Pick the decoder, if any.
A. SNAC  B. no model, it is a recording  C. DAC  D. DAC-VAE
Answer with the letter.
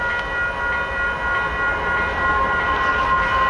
B